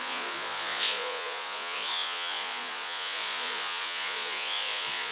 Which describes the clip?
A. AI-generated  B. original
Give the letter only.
A